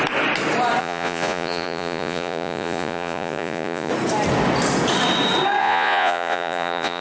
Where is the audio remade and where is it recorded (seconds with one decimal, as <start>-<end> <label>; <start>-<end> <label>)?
0.0-0.8 recorded; 0.8-3.9 remade; 3.9-5.6 recorded; 5.6-7.0 remade